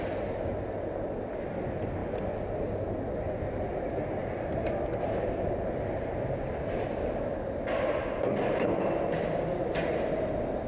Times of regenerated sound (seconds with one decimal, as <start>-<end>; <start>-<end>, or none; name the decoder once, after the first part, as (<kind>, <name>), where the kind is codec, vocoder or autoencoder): none